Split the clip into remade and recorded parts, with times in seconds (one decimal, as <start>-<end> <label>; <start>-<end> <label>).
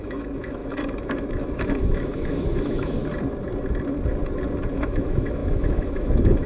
0.0-3.0 remade; 3.0-4.7 recorded; 4.7-6.5 remade